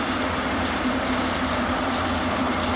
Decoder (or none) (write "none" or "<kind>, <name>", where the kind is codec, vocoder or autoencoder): vocoder, BigVGAN v2